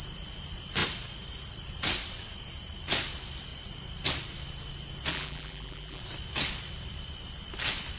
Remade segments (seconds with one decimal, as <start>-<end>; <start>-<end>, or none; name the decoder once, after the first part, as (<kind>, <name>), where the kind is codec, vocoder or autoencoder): 5.1-6.0 (vocoder, BigVGAN v2)